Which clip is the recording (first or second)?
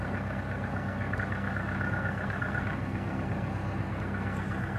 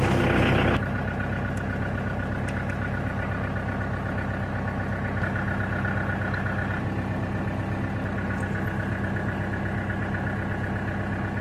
second